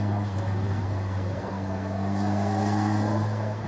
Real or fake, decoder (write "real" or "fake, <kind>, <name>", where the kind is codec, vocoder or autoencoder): fake, codec, SNAC